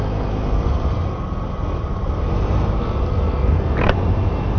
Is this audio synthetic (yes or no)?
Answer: no